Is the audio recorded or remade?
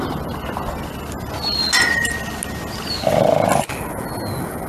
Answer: recorded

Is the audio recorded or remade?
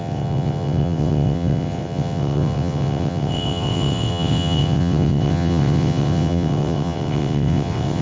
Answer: remade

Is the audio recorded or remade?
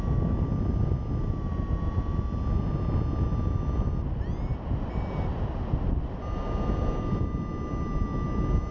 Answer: recorded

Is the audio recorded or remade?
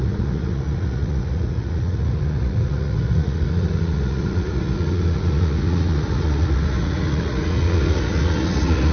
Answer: remade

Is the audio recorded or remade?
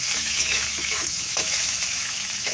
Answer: remade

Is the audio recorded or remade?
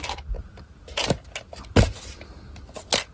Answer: recorded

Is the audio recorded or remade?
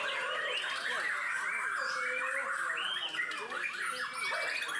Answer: recorded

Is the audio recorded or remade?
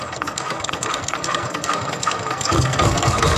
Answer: remade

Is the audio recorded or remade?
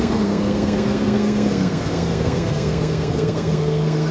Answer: remade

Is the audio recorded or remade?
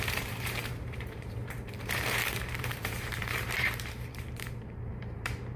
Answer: remade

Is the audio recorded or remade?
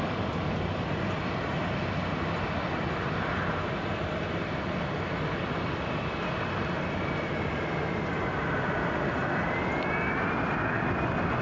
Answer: recorded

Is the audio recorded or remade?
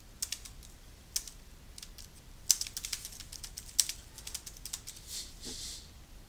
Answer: recorded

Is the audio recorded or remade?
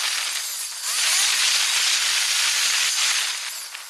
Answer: recorded